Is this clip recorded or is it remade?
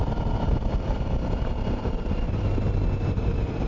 recorded